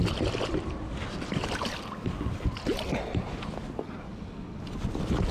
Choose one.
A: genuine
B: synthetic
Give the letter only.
A